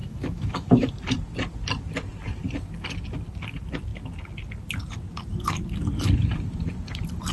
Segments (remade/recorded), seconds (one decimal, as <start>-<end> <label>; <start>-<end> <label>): 0.0-0.9 remade; 0.9-7.3 recorded